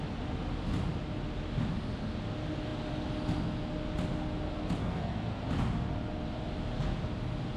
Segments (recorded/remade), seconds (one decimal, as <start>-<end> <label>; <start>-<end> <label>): 0.0-4.8 recorded; 4.8-5.4 remade; 5.4-7.6 recorded